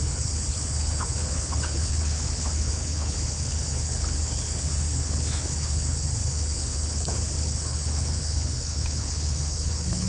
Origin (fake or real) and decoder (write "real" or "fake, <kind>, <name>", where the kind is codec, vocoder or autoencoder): fake, codec, HILCodec